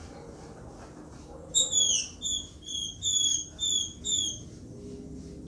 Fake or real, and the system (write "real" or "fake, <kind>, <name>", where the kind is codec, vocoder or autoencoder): real